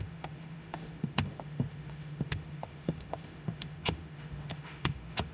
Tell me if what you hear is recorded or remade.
remade